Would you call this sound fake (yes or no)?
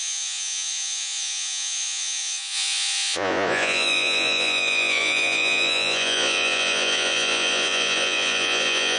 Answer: yes